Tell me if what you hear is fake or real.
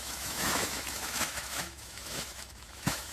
fake